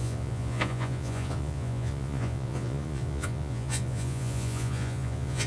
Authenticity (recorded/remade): remade